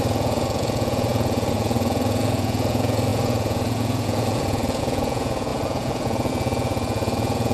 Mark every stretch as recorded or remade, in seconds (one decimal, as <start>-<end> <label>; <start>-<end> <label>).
0.0-7.5 remade